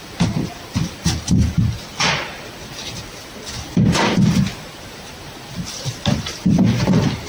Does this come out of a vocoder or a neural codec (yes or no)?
no